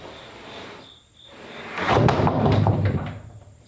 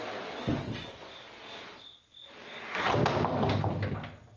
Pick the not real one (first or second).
first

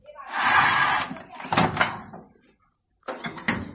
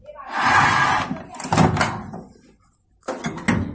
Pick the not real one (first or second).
first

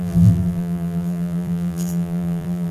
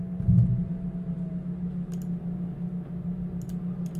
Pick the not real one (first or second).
first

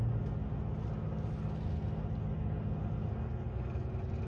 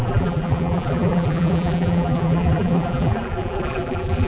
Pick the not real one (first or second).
second